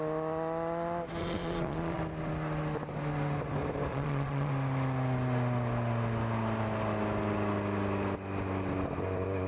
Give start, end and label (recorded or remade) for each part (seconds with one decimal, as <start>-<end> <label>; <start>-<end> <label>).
0.0-1.2 recorded; 1.2-2.0 remade; 2.0-3.9 recorded; 3.9-4.5 remade; 4.5-9.5 recorded